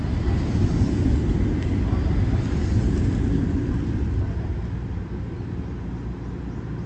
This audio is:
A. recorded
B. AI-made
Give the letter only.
A